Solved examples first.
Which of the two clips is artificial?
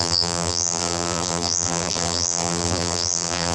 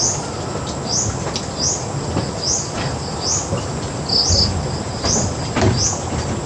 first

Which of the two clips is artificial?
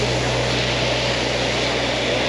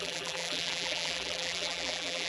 second